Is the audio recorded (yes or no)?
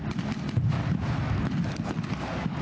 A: yes